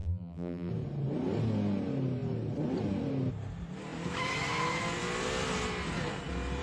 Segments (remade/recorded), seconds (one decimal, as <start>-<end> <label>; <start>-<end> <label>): 0.0-0.7 remade; 0.7-6.6 recorded